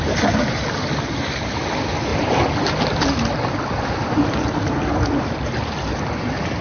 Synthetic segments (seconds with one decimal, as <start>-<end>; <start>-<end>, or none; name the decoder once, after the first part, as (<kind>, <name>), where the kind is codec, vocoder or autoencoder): 0.0-2.1 (vocoder, BigVGAN v2); 3.4-6.6